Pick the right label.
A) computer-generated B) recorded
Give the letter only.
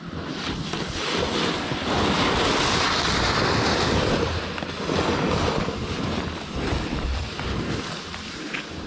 B